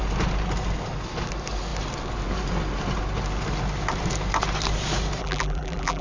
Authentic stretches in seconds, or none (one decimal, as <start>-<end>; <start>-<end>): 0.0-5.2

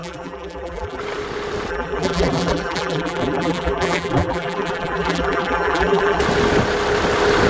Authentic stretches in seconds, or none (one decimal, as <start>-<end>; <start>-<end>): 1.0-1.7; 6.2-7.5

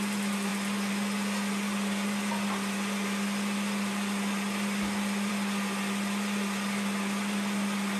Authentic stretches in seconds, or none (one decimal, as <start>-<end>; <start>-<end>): 0.0-8.0